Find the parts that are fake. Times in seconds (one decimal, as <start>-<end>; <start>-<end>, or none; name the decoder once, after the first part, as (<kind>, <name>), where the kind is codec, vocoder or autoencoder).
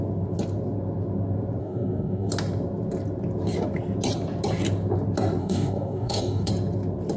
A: 1.6-2.3 (codec, DAC); 5.4-6.5